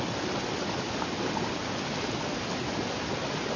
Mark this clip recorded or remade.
recorded